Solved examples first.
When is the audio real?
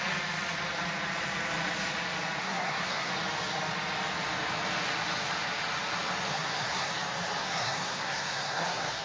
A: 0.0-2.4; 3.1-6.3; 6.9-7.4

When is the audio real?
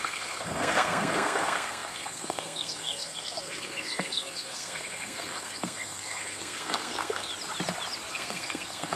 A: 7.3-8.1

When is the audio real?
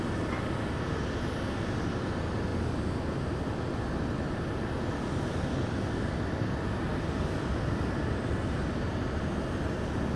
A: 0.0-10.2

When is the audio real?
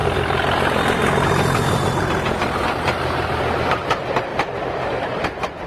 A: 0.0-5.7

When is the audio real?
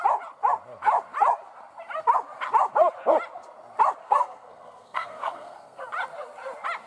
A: 0.0-4.0; 5.8-6.9